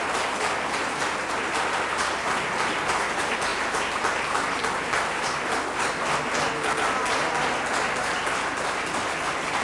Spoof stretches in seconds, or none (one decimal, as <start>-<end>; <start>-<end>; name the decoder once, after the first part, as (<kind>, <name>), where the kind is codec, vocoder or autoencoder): none